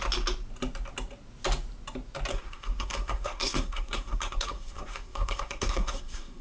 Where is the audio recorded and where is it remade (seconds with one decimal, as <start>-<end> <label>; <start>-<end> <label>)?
0.0-2.3 recorded; 2.3-6.4 remade